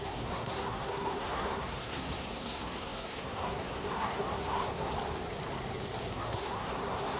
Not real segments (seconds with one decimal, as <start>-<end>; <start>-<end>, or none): 0.0-4.9; 6.1-7.2